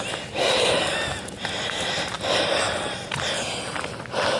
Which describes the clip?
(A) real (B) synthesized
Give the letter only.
A